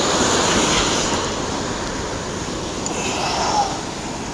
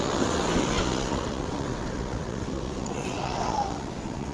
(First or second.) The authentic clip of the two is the first